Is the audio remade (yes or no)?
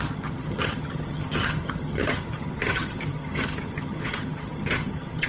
yes